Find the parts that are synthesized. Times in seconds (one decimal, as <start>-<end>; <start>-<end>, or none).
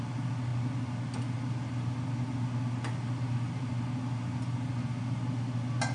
none